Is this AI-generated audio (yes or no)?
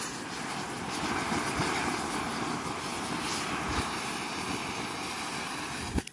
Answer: no